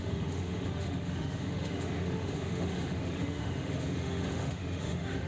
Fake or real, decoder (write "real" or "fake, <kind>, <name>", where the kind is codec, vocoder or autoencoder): fake, autoencoder, DAC-VAE